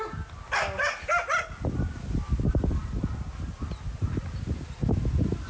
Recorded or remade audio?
recorded